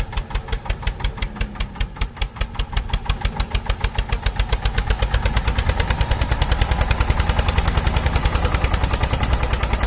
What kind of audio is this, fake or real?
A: real